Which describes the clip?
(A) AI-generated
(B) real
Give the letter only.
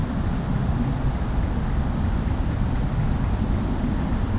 B